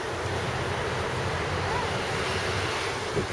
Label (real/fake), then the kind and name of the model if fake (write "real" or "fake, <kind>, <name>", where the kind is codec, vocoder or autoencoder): real